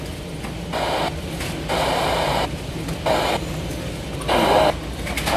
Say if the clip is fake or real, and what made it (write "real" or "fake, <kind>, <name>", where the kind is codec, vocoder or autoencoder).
real